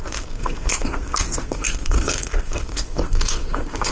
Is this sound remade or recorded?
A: remade